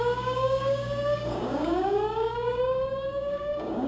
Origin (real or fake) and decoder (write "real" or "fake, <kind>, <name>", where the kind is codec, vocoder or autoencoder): fake, codec, DAC